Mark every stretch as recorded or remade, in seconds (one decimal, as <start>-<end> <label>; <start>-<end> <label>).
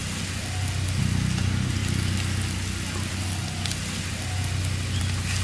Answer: 0.0-5.4 recorded